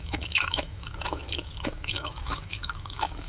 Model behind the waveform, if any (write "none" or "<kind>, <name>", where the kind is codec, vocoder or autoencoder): autoencoder, DAC-VAE